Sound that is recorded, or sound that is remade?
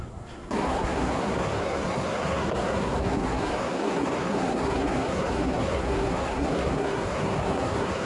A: remade